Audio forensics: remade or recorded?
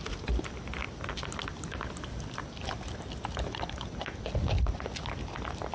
recorded